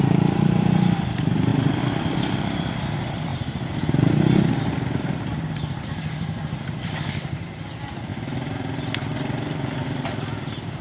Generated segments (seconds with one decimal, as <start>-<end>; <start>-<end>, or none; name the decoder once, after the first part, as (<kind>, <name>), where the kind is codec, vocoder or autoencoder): 0.0-3.3 (vocoder, BigVGAN v2); 4.7-10.8